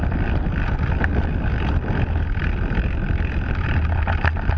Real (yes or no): yes